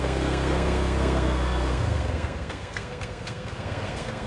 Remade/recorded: remade